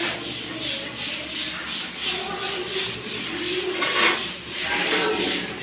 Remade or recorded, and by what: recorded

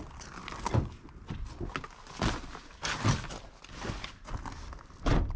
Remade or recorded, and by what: recorded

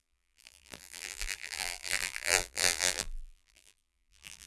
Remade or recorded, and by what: remade, vocoder, BigVGAN v2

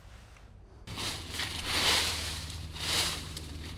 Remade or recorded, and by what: remade, vocoder, BigVGAN v2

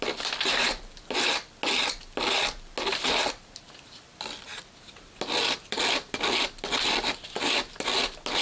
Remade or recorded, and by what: recorded